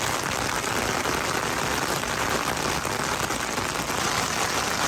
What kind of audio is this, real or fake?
real